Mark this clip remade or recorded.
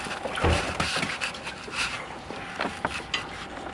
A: recorded